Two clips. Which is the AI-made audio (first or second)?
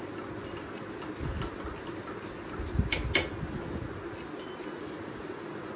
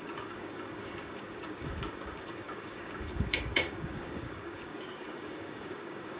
second